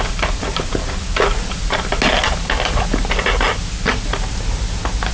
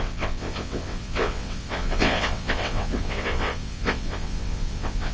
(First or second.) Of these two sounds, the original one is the first